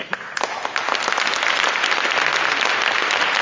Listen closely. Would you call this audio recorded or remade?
recorded